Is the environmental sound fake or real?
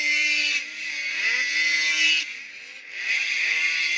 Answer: real